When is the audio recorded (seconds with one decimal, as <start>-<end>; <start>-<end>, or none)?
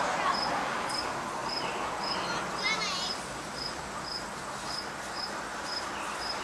0.0-6.4